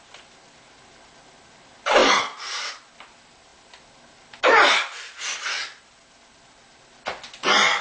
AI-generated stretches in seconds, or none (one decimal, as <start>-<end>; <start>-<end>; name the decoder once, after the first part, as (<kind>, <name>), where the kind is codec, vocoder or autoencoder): none